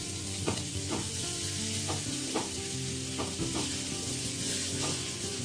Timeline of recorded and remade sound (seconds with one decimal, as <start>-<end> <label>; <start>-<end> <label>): 0.0-1.4 remade; 1.4-4.1 recorded; 4.1-5.4 remade